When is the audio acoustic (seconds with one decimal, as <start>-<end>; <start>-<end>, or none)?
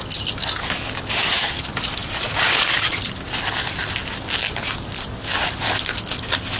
0.0-6.6